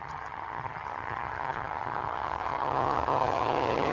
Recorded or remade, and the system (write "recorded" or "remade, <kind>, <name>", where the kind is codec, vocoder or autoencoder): remade, vocoder, HiFi-GAN